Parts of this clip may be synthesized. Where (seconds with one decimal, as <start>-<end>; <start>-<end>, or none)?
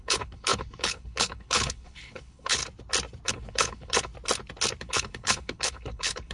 0.0-2.6; 3.3-4.1; 4.8-6.3